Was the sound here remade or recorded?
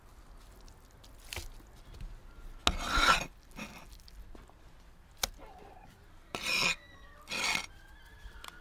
recorded